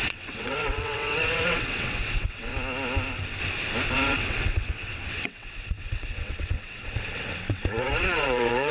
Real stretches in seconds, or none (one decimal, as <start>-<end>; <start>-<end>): 2.5-3.9